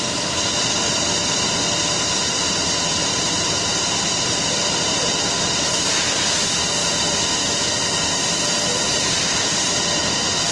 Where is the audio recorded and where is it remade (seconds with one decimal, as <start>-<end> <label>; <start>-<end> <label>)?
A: 0.0-3.0 recorded; 3.0-3.9 remade; 3.9-8.9 recorded; 8.9-9.7 remade; 9.7-10.5 recorded